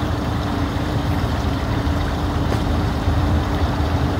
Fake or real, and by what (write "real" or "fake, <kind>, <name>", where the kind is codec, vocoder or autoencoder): fake, vocoder, BigVGAN v2